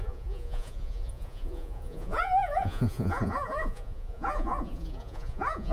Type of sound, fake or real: fake